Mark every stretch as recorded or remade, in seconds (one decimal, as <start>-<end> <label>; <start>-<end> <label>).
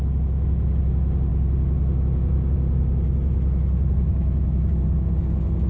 0.0-5.7 recorded